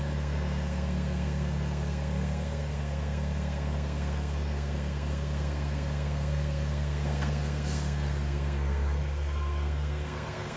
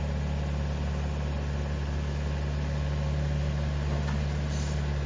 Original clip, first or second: second